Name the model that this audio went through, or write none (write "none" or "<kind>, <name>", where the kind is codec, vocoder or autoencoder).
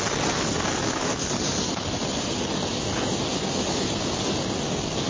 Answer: none